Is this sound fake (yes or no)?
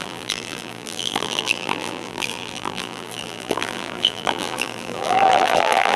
yes